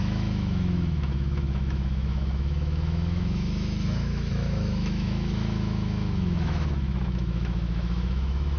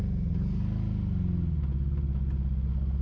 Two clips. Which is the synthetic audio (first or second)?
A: first